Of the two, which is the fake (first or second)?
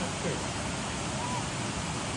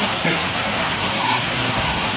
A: second